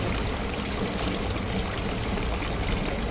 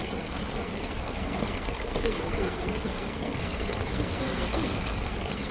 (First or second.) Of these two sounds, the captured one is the first